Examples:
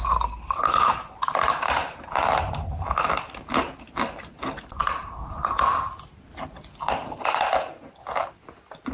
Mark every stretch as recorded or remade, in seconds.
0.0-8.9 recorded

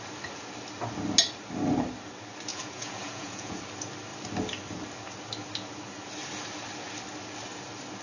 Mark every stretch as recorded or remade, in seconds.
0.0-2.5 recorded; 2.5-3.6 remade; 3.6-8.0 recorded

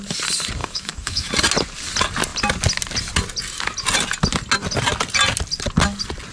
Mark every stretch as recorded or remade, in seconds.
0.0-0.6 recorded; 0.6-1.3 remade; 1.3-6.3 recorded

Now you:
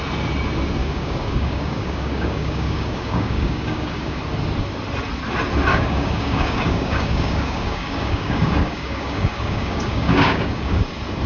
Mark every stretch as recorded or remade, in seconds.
0.0-0.8 recorded; 0.8-4.2 remade; 4.2-5.7 recorded; 5.7-10.8 remade; 10.8-11.3 recorded

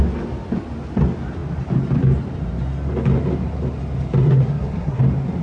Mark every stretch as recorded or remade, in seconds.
0.0-4.2 recorded; 4.2-5.0 remade; 5.0-5.4 recorded